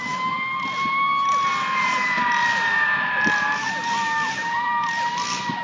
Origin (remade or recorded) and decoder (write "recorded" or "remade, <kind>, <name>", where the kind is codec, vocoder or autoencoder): remade, vocoder, BigVGAN v2